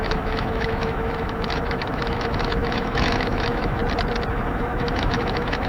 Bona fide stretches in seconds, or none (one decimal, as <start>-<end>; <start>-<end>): 3.8-4.3